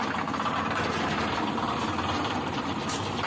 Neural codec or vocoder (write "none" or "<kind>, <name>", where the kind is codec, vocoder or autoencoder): vocoder, BigVGAN v2